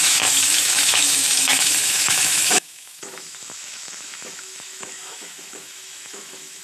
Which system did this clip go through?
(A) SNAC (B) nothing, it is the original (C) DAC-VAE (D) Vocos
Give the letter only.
C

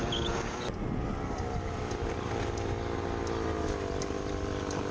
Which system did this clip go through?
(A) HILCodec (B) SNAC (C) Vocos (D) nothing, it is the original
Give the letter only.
D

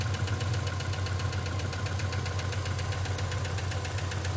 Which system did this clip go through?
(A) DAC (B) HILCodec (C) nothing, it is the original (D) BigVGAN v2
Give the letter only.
C